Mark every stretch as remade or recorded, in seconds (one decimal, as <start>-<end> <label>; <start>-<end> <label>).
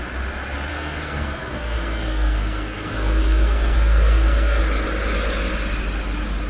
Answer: 0.0-0.7 recorded; 0.7-4.6 remade; 4.6-6.5 recorded